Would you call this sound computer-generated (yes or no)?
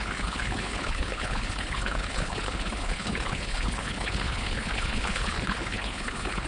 yes